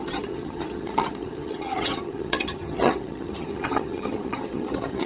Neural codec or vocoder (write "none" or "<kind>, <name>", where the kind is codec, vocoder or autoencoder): vocoder, HiFi-GAN